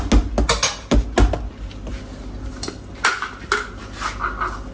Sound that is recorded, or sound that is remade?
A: recorded